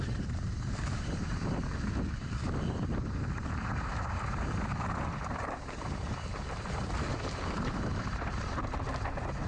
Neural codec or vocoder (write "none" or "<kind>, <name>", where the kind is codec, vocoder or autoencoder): vocoder, BigVGAN v2